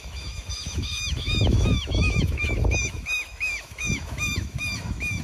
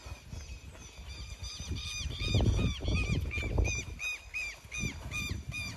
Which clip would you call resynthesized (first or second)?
first